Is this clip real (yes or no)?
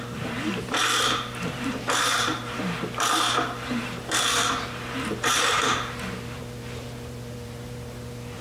no